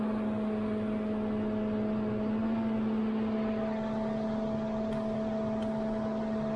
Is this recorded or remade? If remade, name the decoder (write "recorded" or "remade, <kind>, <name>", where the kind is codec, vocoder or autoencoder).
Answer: recorded